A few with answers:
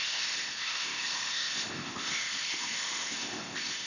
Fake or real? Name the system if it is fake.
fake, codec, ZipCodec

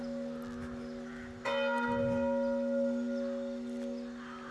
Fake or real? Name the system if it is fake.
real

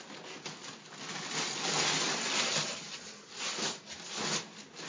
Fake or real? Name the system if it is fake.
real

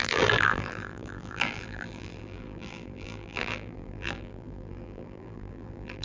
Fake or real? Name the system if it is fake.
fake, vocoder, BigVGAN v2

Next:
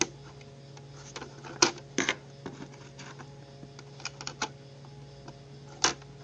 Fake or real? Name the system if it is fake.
real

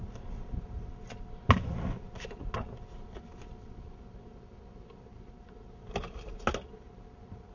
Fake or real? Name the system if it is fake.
real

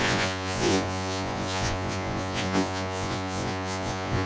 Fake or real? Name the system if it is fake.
fake, vocoder, Vocos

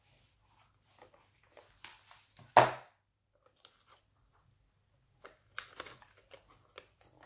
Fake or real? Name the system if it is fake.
real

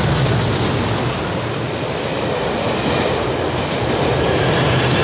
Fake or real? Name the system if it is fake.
real